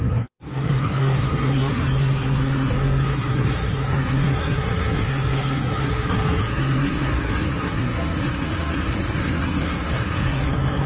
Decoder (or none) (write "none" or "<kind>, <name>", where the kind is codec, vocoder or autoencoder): codec, SNAC